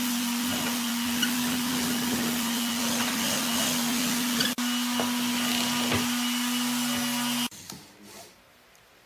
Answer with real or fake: real